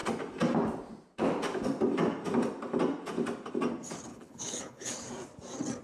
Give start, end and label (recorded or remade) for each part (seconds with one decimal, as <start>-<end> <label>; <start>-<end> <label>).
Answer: 0.0-4.1 recorded; 4.1-5.1 remade; 5.1-5.8 recorded